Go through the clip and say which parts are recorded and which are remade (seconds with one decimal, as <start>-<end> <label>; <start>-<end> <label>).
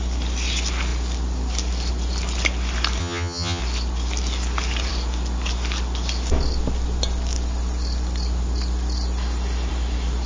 0.0-3.0 recorded; 3.0-3.6 remade; 3.6-10.3 recorded